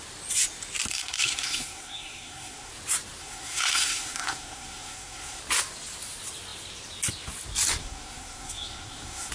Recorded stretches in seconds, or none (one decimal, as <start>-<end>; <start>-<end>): 0.0-0.9; 2.7-3.2; 5.4-7.8